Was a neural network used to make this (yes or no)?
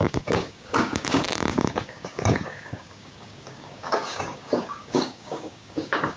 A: yes